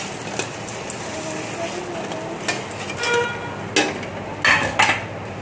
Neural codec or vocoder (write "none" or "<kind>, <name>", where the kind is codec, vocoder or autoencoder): none